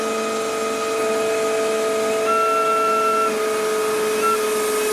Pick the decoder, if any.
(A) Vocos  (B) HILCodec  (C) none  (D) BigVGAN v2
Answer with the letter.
C